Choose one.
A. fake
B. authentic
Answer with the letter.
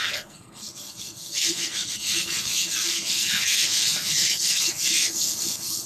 A